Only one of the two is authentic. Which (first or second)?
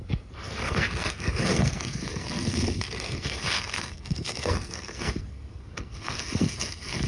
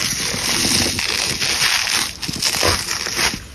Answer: second